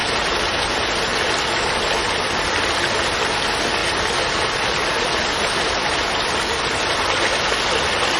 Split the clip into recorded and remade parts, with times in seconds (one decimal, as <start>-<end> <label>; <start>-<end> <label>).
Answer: 0.0-1.4 remade; 1.4-3.8 recorded; 3.8-6.3 remade; 6.3-8.2 recorded